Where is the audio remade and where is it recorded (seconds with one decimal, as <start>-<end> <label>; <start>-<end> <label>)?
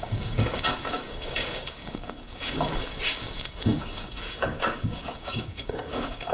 0.0-6.3 remade